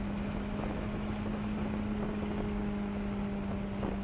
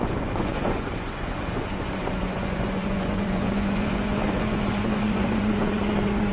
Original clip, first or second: first